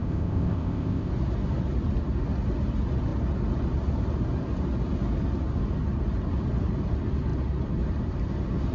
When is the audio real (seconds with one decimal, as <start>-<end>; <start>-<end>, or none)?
1.1-8.7